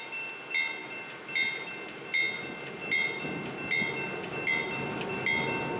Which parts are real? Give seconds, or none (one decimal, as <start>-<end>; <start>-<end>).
0.0-5.8